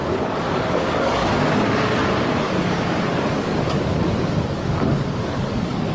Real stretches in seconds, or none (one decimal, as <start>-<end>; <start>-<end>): none